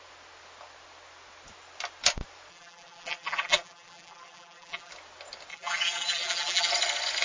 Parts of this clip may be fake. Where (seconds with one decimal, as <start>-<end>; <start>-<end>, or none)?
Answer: 2.5-4.9; 5.5-6.7